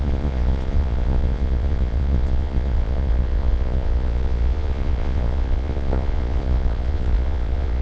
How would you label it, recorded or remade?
remade